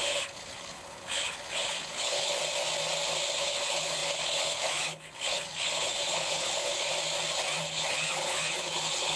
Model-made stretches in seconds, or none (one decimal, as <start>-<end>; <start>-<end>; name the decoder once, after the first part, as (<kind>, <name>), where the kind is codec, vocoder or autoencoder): 0.0-2.4 (codec, HILCodec); 3.4-6.9; 7.6-9.2